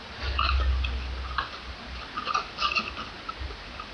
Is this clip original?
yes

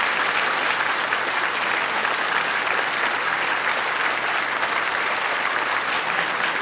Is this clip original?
yes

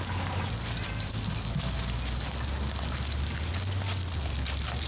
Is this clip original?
yes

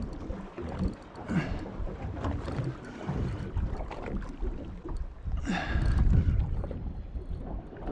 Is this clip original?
yes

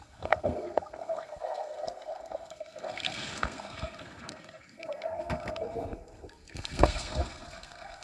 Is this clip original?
no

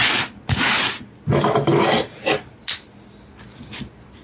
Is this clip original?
yes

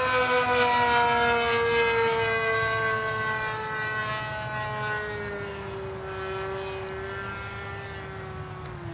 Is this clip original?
yes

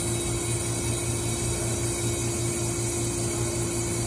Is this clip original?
yes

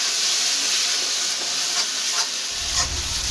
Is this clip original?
yes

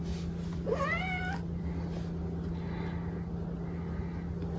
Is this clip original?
yes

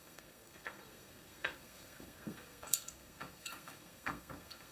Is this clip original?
no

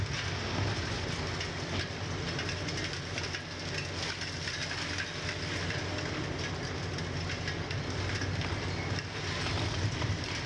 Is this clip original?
yes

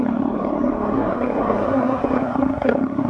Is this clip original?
no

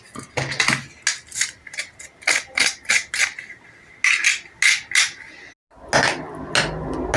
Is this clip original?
yes